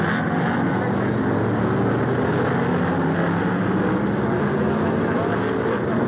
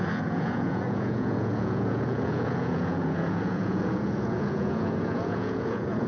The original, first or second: first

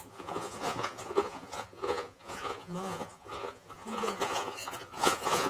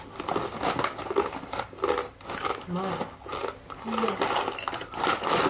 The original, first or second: second